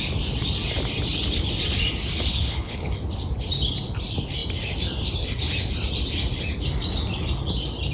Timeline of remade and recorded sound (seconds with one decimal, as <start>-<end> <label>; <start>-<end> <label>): 0.0-2.3 recorded; 2.3-2.9 remade; 2.9-7.9 recorded